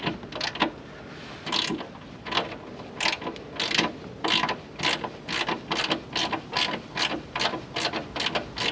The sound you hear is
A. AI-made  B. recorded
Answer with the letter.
B